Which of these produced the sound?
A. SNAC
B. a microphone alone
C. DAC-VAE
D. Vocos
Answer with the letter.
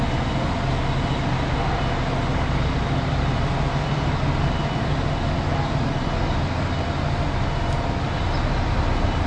B